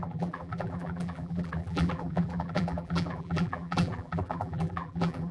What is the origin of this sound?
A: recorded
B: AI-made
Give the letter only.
B